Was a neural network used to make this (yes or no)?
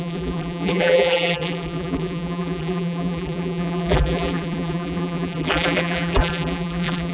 yes